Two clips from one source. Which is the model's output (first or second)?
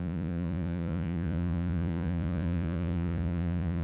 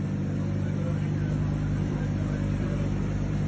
first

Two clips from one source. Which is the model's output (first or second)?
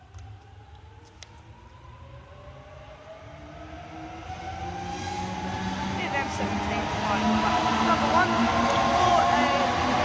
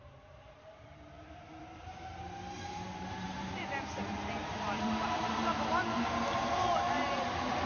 second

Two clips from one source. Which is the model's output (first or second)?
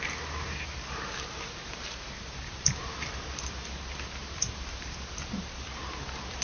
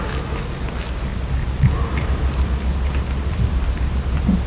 first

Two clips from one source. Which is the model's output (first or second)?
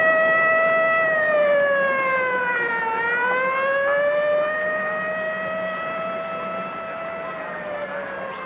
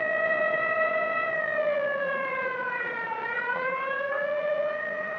second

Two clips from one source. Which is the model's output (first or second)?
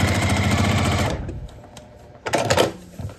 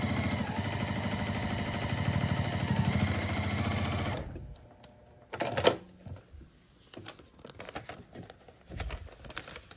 first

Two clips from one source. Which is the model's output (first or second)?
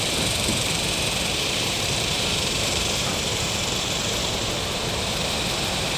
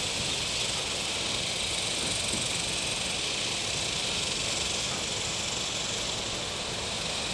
first